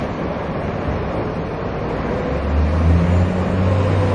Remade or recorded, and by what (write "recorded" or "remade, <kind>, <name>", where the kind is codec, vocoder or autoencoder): recorded